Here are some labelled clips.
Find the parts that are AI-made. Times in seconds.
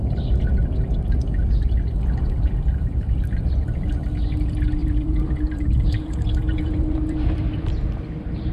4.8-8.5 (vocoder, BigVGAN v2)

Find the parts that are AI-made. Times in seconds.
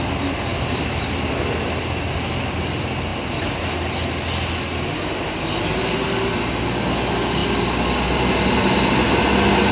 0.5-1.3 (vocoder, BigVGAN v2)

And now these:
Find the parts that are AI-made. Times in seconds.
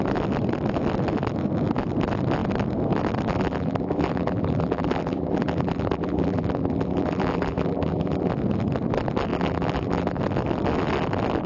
3.3-8.3 (vocoder, BigVGAN v2); 9.3-10.2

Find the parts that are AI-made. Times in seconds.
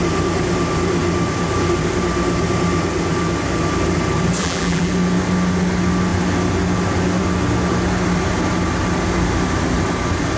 4.4-4.9 (vocoder, BigVGAN v2)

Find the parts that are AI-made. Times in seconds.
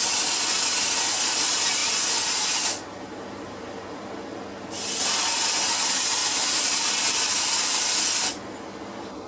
6.2-6.9 (vocoder, BigVGAN v2)